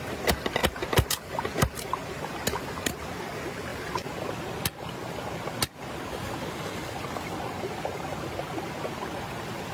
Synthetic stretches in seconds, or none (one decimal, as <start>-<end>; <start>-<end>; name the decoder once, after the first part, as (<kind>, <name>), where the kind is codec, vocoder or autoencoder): 3.7-4.3 (vocoder, BigVGAN v2)